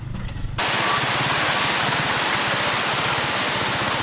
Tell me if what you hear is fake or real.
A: real